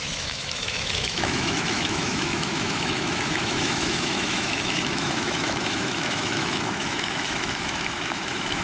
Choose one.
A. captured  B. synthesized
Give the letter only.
B